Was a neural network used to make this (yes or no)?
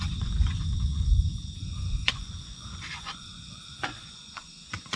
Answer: yes